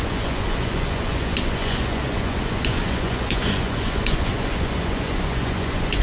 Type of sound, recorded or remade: remade